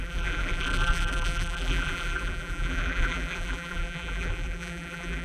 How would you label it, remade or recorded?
remade